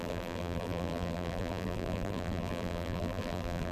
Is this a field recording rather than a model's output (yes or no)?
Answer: no